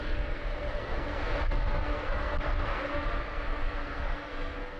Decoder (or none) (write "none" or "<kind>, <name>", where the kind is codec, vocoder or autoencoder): codec, SNAC